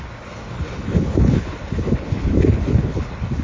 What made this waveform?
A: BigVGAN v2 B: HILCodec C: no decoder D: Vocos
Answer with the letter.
B